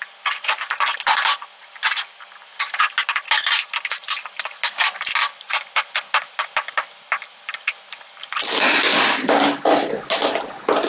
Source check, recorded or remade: recorded